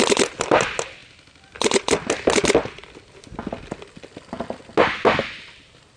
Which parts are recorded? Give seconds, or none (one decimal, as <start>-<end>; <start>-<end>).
0.0-6.0